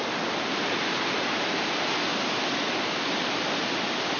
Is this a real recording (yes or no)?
yes